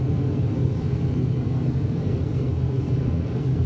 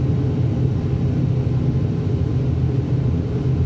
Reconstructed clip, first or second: first